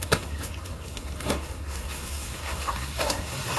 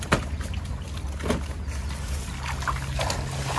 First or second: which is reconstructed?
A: first